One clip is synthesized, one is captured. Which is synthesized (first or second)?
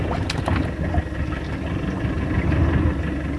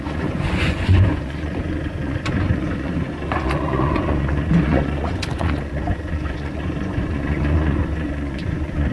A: second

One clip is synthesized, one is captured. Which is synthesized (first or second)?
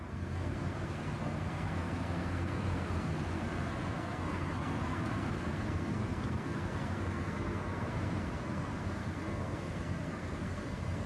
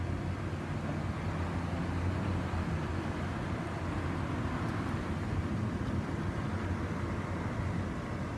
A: first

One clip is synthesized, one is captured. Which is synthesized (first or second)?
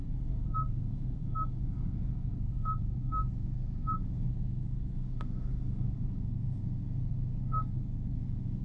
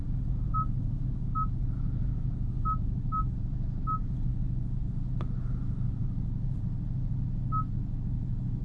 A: first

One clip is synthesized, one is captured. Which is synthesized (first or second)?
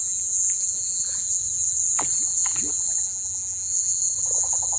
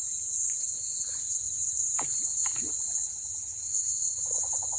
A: second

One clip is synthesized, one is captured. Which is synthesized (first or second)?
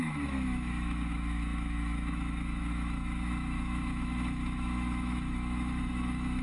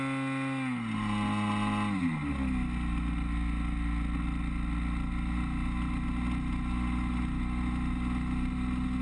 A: first